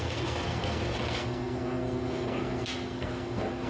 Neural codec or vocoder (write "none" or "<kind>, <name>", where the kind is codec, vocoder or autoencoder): codec, SNAC